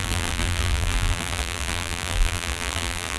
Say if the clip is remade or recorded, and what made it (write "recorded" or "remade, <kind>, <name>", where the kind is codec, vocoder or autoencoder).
remade, vocoder, BigVGAN v2